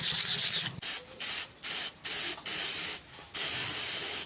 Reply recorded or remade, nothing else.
recorded